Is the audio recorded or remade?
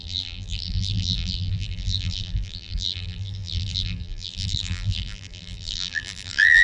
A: remade